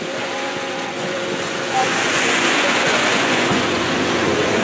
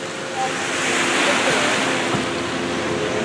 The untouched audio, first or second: second